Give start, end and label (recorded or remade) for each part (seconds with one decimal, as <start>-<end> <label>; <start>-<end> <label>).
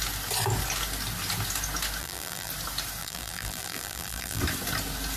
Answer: 0.0-2.0 recorded; 2.0-2.5 remade; 2.5-3.0 recorded; 3.0-4.4 remade; 4.4-5.2 recorded